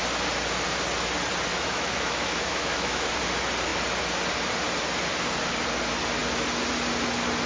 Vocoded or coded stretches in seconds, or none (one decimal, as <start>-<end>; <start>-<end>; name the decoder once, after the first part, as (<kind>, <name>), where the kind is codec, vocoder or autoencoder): 1.5-3.2 (autoencoder, DAC-VAE)